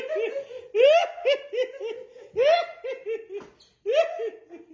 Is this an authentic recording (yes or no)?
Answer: yes